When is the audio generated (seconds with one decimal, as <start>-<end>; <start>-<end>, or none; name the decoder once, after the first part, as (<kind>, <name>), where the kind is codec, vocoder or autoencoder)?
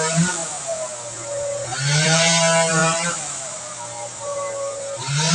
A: 0.0-0.4 (vocoder, BigVGAN v2); 1.1-5.3